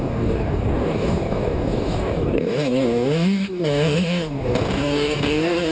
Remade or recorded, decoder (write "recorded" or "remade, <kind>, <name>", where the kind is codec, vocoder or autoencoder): remade, codec, DAC